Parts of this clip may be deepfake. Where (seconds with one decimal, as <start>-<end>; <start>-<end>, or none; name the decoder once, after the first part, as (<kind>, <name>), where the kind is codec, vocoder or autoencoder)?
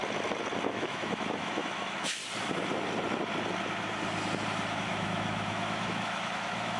0.7-2.2 (autoencoder, DAC-VAE); 4.7-6.8